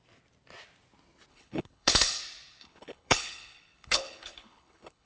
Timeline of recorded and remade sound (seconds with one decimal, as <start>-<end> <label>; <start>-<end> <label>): 0.0-1.3 recorded; 1.3-2.2 remade; 2.2-2.6 recorded; 2.6-5.1 remade